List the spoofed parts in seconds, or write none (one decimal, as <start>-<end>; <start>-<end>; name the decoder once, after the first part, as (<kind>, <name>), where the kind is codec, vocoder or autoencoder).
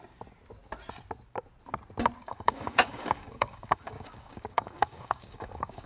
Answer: 2.2-5.9 (codec, DAC)